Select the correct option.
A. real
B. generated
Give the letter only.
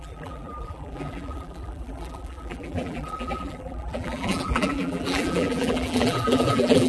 B